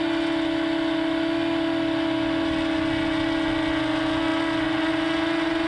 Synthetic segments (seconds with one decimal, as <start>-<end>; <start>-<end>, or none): none